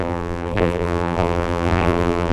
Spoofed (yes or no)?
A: yes